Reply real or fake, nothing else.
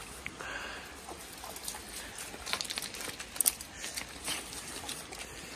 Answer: real